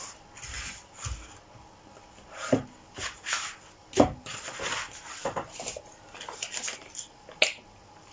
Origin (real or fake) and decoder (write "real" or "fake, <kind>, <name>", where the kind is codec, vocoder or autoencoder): real